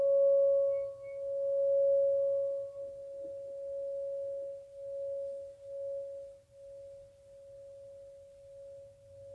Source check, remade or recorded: recorded